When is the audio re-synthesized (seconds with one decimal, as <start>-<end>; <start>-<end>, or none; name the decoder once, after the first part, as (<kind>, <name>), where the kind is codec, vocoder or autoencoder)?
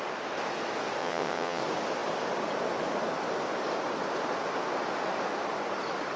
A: 1.0-1.6 (vocoder, WaveNeXt)